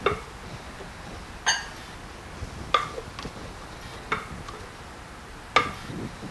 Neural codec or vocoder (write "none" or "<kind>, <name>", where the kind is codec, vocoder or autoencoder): none